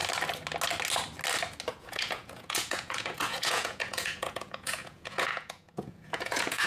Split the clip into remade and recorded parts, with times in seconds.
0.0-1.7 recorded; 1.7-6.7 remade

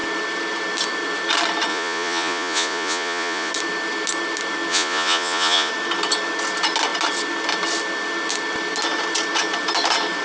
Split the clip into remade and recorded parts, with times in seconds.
0.0-1.7 recorded; 1.7-3.5 remade; 3.5-4.7 recorded; 4.7-5.7 remade; 5.7-10.2 recorded

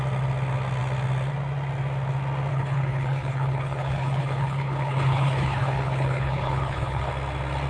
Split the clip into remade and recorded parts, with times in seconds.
0.0-2.5 recorded; 2.5-7.1 remade; 7.1-7.7 recorded